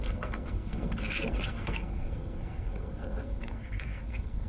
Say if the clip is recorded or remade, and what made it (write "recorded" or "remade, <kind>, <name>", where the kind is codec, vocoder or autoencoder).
remade, codec, SNAC